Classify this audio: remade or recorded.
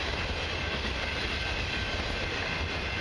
recorded